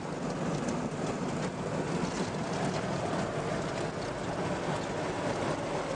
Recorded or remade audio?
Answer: recorded